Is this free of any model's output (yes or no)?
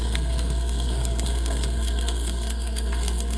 no